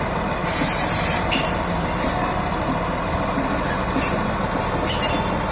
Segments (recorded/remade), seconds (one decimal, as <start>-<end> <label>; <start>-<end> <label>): 0.0-0.4 recorded; 0.4-3.7 remade; 3.7-5.5 recorded